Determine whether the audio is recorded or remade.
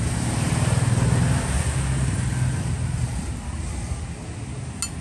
recorded